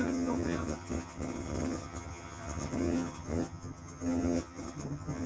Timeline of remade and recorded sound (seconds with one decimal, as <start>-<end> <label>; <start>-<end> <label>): 0.0-5.3 remade